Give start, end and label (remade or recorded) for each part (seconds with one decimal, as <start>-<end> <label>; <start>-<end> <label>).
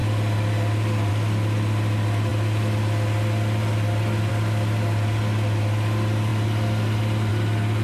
0.0-7.8 recorded